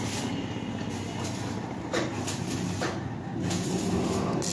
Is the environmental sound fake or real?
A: real